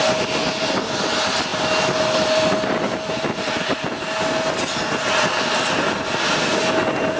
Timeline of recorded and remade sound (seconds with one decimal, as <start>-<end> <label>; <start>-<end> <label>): 0.0-7.2 recorded

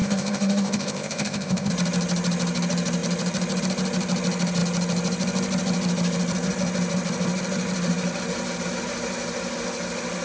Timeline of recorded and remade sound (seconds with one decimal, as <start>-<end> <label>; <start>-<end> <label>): 0.0-1.7 remade; 1.7-10.2 recorded

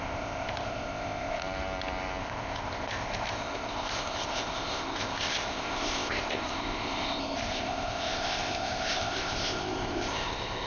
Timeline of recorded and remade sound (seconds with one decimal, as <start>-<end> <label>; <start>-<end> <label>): 0.0-1.4 remade; 1.4-2.2 recorded; 2.2-10.7 remade

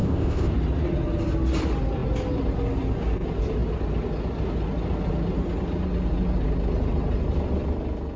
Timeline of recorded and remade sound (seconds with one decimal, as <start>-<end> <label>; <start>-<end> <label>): 0.0-0.5 remade; 0.5-8.2 recorded

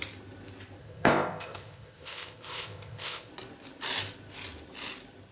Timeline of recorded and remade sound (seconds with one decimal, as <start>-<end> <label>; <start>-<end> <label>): 0.0-0.8 recorded; 0.8-3.3 remade; 3.3-5.3 recorded

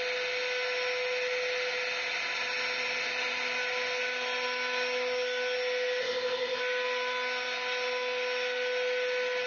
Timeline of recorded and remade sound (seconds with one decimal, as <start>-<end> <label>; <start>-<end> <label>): 0.0-6.0 recorded; 6.0-6.6 remade; 6.6-9.5 recorded

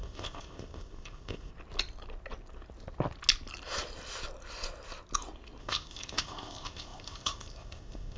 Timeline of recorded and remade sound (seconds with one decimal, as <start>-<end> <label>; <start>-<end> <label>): 0.0-1.5 remade; 1.5-5.6 recorded; 5.6-8.2 remade